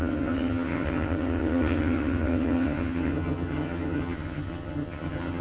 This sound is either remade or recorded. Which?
remade